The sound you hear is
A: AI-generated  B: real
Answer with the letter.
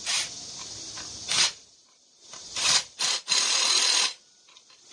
B